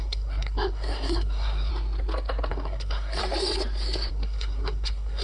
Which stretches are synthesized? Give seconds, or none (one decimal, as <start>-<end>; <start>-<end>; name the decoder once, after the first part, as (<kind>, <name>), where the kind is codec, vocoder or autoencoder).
0.0-1.7 (codec, SNAC); 2.5-3.2; 4.1-5.2